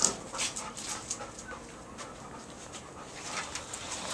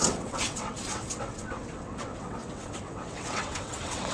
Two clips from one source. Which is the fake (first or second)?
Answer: second